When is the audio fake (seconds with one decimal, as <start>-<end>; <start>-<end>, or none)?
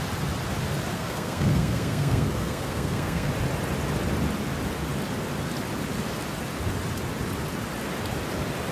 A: 0.9-3.3